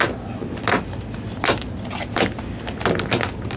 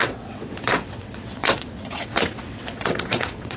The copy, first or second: second